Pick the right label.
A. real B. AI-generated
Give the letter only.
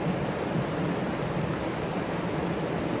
A